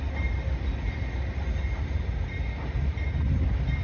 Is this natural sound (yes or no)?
yes